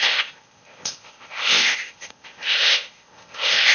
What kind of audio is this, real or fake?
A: fake